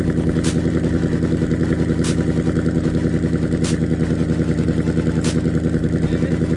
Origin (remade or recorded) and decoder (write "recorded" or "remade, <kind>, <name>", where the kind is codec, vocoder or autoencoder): recorded